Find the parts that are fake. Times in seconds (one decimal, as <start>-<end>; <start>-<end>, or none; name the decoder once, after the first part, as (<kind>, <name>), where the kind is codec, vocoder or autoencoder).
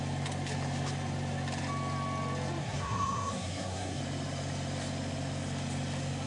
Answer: 2.6-4.0 (codec, SNAC)